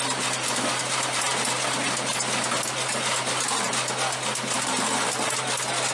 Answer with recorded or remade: recorded